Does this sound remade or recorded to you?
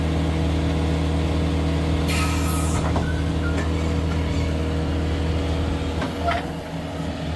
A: recorded